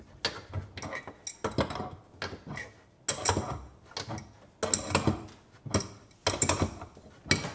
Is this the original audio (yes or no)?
yes